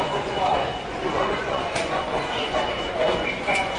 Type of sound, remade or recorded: remade